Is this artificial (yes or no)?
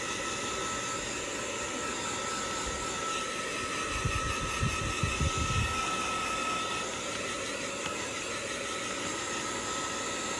no